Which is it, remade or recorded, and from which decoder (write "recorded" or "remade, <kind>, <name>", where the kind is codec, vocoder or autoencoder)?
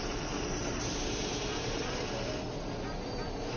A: recorded